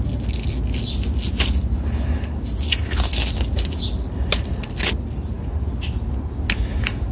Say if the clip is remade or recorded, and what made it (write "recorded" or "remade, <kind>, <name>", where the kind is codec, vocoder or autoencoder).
recorded